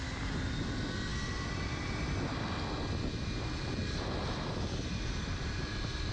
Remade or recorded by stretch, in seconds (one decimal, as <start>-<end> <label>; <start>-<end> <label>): 0.0-6.1 recorded

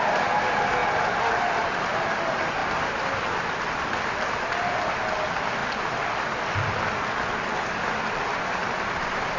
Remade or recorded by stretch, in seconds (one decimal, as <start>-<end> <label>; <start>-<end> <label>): 0.0-5.6 recorded; 5.6-6.4 remade; 6.4-8.6 recorded; 8.6-9.4 remade

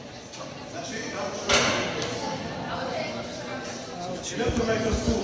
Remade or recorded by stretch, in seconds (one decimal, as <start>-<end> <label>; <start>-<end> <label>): 0.0-0.8 remade; 0.8-1.9 recorded; 1.9-3.5 remade; 3.5-4.5 recorded; 4.5-5.2 remade

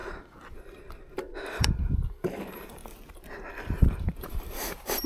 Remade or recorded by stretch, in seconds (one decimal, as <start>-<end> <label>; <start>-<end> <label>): 0.0-1.5 recorded; 1.5-2.8 remade; 2.8-3.5 recorded; 3.5-5.1 remade